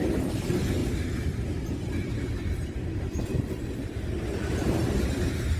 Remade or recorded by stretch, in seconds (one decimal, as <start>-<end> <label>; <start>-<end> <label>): 0.0-5.6 recorded